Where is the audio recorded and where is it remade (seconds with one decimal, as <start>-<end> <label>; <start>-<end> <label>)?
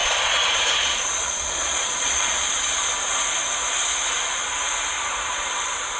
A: 0.0-2.9 remade; 2.9-6.0 recorded